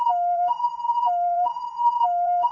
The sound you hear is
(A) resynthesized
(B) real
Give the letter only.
A